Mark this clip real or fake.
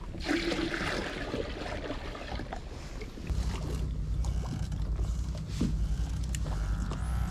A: real